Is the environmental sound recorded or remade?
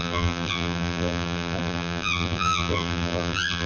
remade